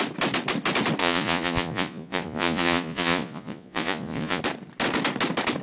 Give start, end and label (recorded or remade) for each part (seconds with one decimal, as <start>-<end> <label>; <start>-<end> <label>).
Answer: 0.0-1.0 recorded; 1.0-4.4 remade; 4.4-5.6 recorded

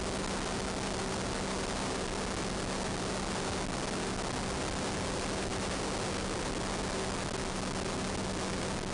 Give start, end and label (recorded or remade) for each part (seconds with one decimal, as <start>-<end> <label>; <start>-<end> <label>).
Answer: 0.0-8.9 recorded

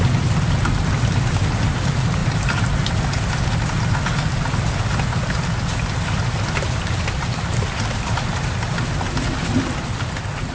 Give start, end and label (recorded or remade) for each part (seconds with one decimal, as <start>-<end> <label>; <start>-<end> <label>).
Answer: 0.0-10.5 recorded

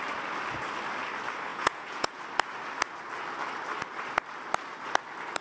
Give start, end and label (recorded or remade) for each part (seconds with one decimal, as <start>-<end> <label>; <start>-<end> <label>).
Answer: 0.0-1.5 recorded; 1.5-2.2 remade; 2.2-5.4 recorded

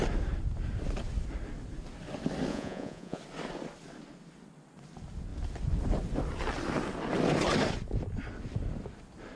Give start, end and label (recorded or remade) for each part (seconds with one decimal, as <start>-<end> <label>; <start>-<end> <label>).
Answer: 0.0-2.5 recorded; 2.5-3.2 remade; 3.2-9.4 recorded

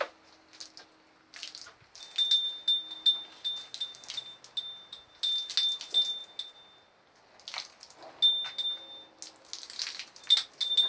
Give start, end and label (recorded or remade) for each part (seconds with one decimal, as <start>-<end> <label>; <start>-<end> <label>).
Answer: 0.0-10.9 recorded

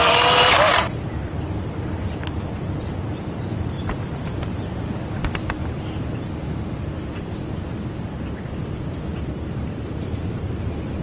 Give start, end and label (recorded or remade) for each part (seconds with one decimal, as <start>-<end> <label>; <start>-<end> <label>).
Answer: 0.0-5.6 remade; 5.6-6.9 recorded; 6.9-11.0 remade

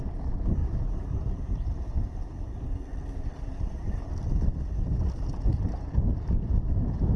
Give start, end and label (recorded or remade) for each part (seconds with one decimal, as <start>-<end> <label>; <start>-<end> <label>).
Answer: 0.0-7.2 recorded